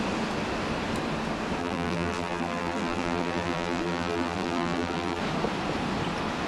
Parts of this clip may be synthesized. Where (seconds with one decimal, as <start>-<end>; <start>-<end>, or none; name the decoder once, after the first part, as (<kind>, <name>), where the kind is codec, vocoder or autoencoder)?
1.6-5.2 (vocoder, BigVGAN v2)